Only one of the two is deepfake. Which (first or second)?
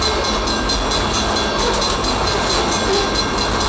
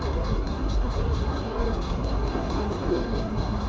second